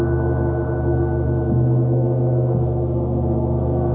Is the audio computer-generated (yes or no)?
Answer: yes